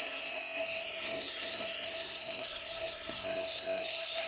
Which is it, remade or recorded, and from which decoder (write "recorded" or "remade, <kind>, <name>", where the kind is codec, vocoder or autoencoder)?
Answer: remade, codec, SNAC